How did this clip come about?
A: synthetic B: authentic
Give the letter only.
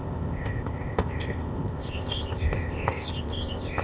A